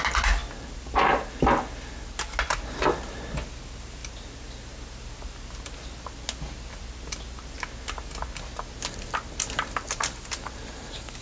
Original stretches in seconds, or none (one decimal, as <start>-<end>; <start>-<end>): 0.0-11.2